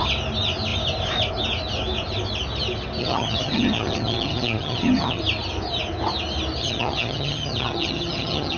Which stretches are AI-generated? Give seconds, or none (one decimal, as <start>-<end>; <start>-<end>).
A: 3.0-5.2; 6.6-8.6